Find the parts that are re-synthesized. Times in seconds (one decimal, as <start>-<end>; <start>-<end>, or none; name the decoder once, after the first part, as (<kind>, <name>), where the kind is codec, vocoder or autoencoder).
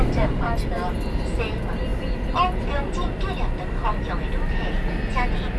none